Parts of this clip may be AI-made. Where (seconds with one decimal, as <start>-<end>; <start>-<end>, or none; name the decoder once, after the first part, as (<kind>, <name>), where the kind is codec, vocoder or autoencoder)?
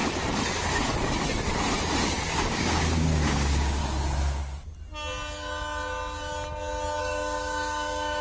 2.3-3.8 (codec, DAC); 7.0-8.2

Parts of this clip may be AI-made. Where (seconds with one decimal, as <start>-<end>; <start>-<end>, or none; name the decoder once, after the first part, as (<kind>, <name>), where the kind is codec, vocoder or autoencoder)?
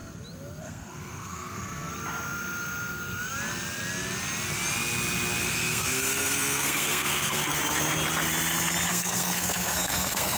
0.6-1.9 (codec, SNAC); 5.4-7.6; 8.9-10.4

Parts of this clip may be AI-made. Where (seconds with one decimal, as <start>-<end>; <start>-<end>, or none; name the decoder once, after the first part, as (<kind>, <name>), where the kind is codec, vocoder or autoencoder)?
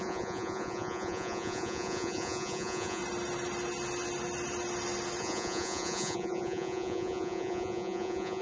0.0-3.0 (vocoder, Vocos); 5.2-8.4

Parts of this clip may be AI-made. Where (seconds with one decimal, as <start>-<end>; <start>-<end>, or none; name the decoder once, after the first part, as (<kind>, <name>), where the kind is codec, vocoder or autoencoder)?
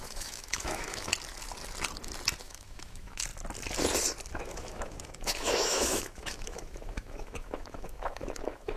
0.0-1.1 (autoencoder, DAC-VAE); 2.4-3.3; 4.3-8.8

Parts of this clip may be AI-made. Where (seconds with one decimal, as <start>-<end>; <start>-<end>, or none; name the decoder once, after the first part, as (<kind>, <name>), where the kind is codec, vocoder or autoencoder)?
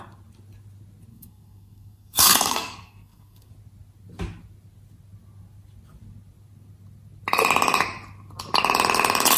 1.1-3.5 (codec, SNAC)